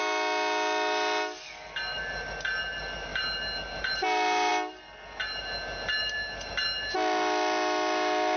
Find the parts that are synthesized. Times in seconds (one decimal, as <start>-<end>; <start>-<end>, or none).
none